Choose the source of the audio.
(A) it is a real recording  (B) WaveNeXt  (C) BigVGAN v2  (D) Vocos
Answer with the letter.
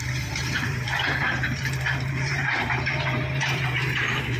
C